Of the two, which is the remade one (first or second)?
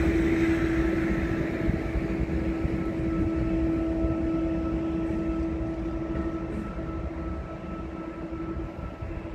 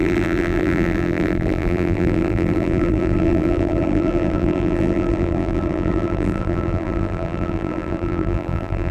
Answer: second